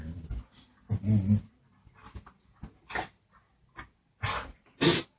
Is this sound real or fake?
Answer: real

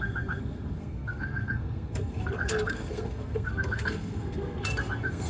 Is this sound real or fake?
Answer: fake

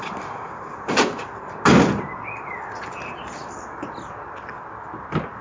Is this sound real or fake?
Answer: real